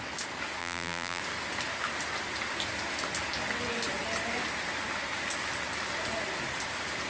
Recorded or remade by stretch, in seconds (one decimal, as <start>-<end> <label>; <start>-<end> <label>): 0.0-0.6 recorded; 0.6-1.2 remade; 1.2-7.1 recorded